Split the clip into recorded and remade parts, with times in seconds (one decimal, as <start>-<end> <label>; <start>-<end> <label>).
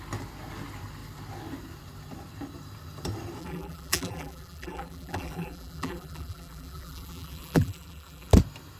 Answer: 0.0-3.4 recorded; 3.4-8.3 remade; 8.3-8.8 recorded